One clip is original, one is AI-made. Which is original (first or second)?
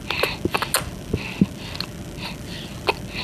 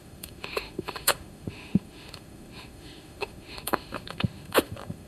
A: first